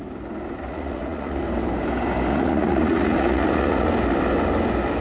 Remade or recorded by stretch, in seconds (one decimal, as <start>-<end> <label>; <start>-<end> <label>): 0.0-0.7 recorded; 0.7-1.4 remade; 1.4-2.3 recorded; 2.3-3.9 remade; 3.9-5.0 recorded